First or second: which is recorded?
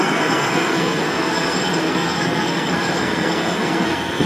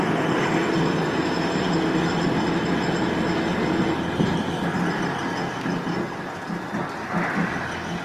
second